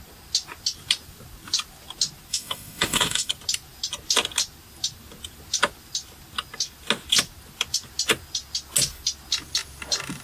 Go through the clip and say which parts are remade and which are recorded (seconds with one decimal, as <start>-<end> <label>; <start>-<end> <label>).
0.0-2.3 recorded; 2.3-3.3 remade; 3.3-10.2 recorded